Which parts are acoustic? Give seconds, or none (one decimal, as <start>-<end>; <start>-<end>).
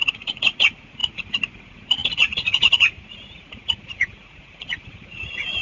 none